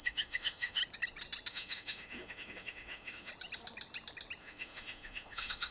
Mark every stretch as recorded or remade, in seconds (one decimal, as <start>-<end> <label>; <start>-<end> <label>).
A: 0.0-0.8 remade; 0.8-1.5 recorded; 1.5-3.3 remade; 3.3-4.4 recorded; 4.4-5.7 remade